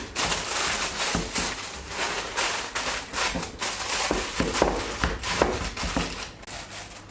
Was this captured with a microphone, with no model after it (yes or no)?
yes